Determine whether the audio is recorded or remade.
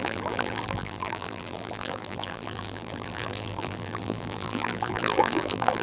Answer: remade